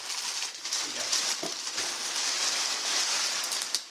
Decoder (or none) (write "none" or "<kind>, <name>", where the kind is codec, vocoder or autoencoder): none